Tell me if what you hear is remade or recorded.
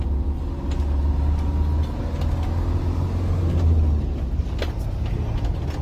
recorded